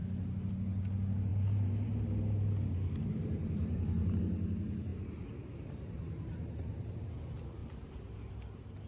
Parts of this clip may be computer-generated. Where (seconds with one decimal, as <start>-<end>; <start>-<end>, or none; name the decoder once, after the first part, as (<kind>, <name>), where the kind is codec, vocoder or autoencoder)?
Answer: 1.3-4.2 (vocoder, BigVGAN v2); 4.9-7.0; 7.6-8.3